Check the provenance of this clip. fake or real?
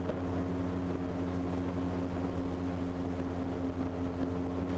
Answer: real